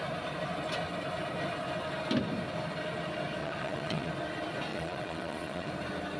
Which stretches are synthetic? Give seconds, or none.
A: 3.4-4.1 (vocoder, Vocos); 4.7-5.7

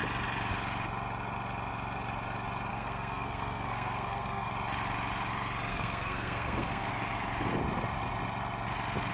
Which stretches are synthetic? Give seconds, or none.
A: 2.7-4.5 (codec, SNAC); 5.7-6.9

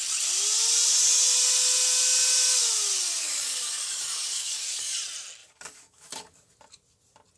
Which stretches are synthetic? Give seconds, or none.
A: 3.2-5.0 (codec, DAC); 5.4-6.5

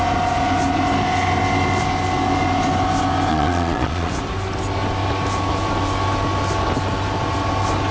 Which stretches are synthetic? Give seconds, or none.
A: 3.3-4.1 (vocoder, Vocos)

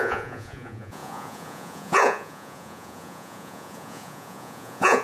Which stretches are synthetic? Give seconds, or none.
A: 0.0-5.0 (vocoder, Vocos)

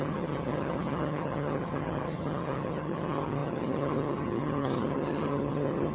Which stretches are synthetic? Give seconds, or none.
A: 0.0-5.9 (vocoder, HiFi-GAN)

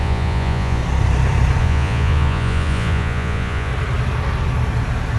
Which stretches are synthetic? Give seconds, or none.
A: 0.0-0.8 (vocoder, Vocos); 1.6-3.7

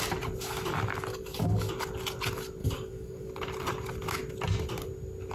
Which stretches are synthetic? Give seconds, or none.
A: 1.1-1.7 (codec, DAC); 2.6-3.3